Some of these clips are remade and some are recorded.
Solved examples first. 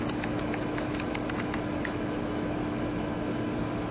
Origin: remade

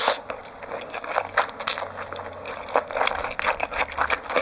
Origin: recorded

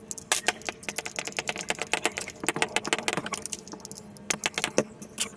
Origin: recorded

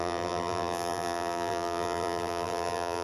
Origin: remade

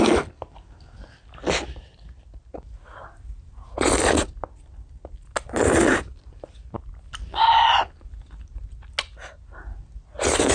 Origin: recorded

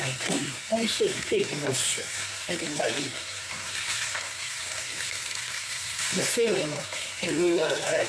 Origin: remade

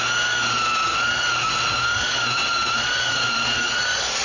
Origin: recorded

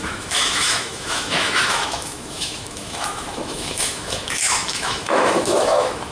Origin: remade